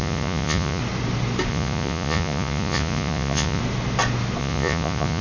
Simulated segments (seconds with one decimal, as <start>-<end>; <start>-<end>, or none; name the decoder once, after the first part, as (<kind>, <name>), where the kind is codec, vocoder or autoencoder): 0.0-0.8 (vocoder, Vocos); 1.5-3.6; 4.4-5.2